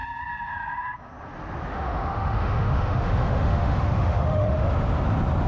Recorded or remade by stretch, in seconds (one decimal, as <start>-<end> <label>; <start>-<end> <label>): 0.0-1.7 recorded; 1.7-4.7 remade; 4.7-5.5 recorded

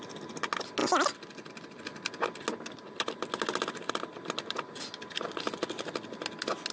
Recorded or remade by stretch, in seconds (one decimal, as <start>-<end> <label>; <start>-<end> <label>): 0.0-6.7 recorded

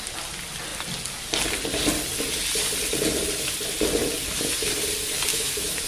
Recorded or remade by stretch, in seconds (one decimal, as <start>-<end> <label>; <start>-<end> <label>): 0.0-5.3 recorded; 5.3-5.9 remade

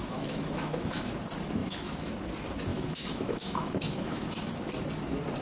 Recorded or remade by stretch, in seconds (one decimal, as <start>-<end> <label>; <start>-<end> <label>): 0.0-1.1 remade; 1.1-1.6 recorded; 1.6-2.1 remade; 2.1-2.7 recorded; 2.7-4.5 remade; 4.5-5.4 recorded

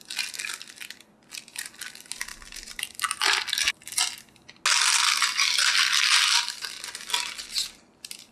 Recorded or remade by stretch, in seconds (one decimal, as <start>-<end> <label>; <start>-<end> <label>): 0.0-8.3 recorded

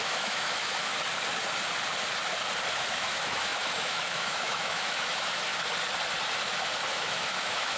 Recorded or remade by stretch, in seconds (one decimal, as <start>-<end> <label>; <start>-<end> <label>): 0.0-0.9 remade; 0.9-2.9 recorded; 2.9-5.5 remade; 5.5-6.9 recorded; 6.9-7.8 remade

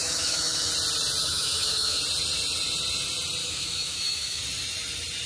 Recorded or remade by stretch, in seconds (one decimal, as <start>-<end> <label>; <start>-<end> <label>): 0.0-0.7 remade; 0.7-1.2 recorded; 1.2-2.0 remade; 2.0-3.4 recorded; 3.4-4.4 remade; 4.4-5.3 recorded